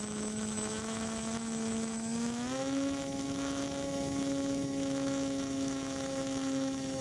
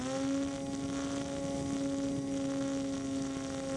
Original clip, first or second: second